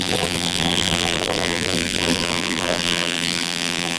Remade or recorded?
remade